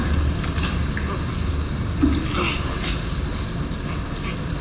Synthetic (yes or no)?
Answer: no